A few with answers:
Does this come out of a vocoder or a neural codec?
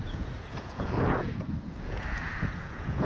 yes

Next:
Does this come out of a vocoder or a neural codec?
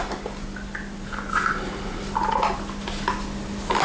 no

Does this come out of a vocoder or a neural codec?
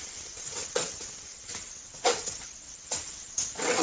yes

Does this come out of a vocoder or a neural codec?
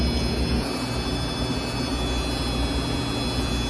no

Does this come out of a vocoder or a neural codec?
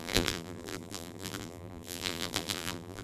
yes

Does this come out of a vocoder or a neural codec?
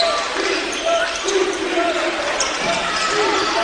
no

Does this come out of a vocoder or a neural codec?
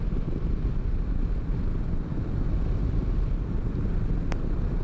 no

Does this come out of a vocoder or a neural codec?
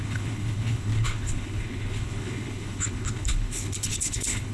yes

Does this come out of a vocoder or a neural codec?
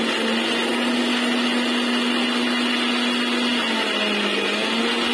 no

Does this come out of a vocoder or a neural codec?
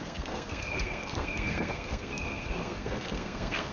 yes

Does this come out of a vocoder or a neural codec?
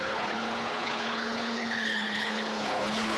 yes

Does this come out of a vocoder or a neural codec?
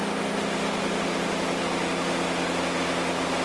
no